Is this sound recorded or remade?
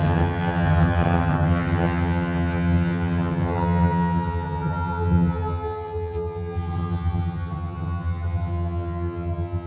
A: remade